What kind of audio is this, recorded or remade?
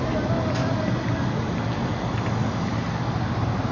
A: recorded